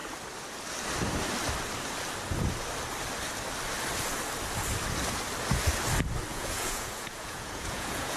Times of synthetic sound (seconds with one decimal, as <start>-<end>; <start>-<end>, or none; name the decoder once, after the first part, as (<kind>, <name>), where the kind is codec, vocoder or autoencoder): 6.3-8.2 (vocoder, Vocos)